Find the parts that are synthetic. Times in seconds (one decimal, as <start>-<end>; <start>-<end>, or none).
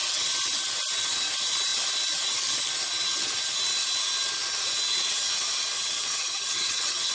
6.1-7.1